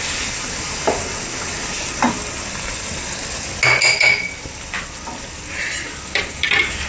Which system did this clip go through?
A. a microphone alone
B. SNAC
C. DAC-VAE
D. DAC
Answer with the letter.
A